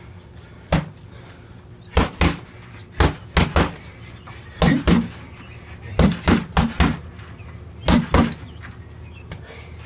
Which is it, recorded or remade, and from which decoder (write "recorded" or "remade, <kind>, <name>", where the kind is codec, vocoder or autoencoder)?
recorded